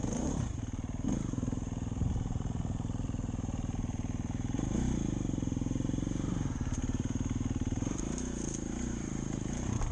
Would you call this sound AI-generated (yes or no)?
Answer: yes